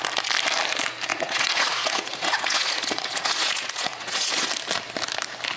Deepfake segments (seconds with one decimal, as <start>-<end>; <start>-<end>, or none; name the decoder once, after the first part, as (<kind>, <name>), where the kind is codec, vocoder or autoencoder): 1.1-4.5 (vocoder, Vocos)